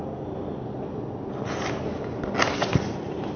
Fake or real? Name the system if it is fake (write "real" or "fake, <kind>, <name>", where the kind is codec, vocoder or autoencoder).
real